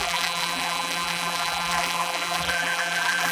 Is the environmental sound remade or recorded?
remade